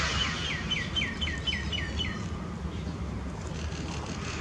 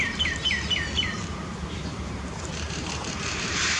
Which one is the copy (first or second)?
second